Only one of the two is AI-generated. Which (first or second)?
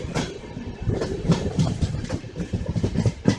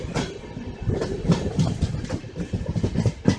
first